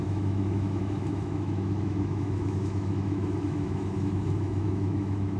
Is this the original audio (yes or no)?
no